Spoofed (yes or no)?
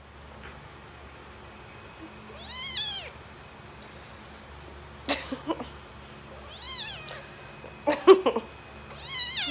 no